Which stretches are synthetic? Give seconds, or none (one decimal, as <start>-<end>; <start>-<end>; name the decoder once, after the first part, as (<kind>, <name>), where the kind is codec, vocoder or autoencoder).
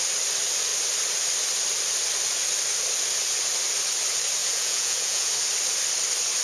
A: 4.4-5.3 (vocoder, Vocos)